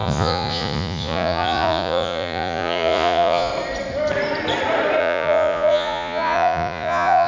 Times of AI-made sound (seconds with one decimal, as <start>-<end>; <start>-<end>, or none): 0.0-3.5; 5.0-7.3